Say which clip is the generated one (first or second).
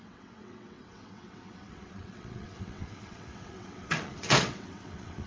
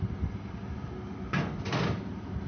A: first